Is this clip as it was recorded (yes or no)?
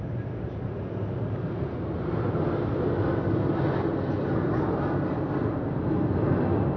yes